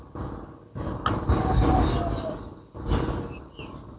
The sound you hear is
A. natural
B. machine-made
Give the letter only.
A